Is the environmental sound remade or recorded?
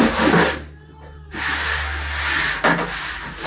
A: recorded